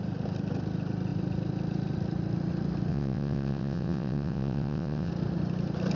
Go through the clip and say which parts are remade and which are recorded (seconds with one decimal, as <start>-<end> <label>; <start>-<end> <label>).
0.0-2.9 recorded; 2.9-5.1 remade; 5.1-6.0 recorded